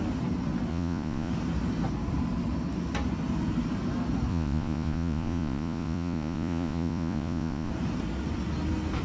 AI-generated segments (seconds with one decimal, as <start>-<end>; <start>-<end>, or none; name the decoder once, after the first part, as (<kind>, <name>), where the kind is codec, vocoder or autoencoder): 0.7-1.3 (vocoder, Vocos); 4.3-7.7